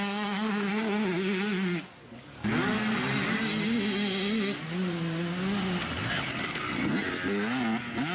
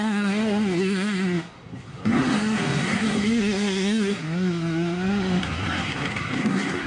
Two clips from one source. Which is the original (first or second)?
first